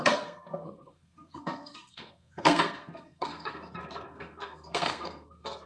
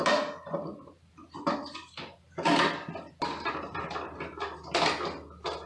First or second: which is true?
second